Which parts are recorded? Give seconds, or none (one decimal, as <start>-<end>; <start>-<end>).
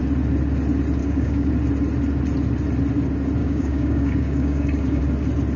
0.0-1.0; 1.5-3.4; 5.0-5.6